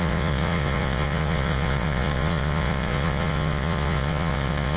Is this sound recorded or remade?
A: remade